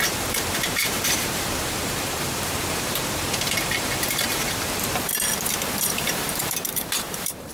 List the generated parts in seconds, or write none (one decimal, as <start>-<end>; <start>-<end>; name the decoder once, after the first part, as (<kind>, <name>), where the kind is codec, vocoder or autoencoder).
0.0-5.1 (vocoder, BigVGAN v2); 5.7-7.5